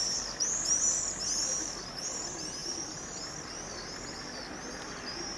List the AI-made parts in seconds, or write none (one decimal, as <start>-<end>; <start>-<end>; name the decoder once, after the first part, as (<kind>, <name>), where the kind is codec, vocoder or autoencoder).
none